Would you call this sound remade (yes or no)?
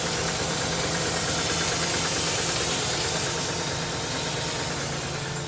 no